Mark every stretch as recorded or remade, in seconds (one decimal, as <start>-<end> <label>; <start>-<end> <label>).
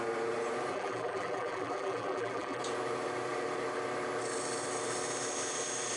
0.0-0.7 recorded; 0.7-2.6 remade; 2.6-6.0 recorded